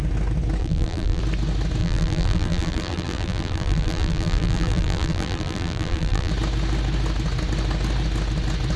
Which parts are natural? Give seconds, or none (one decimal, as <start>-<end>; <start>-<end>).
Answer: 0.0-0.6; 1.2-1.8; 6.3-8.8